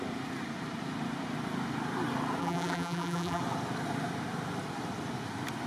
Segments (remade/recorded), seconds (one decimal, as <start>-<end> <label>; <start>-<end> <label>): 0.0-2.4 recorded; 2.4-3.4 remade; 3.4-5.7 recorded